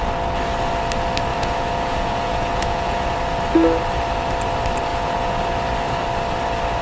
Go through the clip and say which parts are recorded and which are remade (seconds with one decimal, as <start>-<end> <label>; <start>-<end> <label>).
0.0-1.3 recorded; 1.3-3.2 remade; 3.2-4.9 recorded; 4.9-5.4 remade; 5.4-6.8 recorded